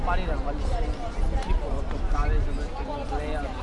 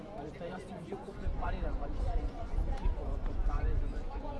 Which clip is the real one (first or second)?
first